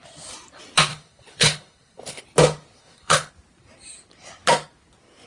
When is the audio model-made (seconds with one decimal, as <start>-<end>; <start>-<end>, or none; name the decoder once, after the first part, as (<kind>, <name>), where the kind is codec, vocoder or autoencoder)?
0.9-2.2 (codec, HILCodec); 2.8-3.3